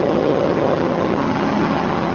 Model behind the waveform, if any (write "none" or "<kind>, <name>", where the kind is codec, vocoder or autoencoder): vocoder, HiFi-GAN